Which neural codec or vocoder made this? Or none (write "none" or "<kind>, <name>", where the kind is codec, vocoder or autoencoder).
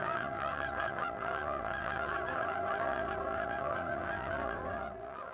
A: vocoder, WaveNeXt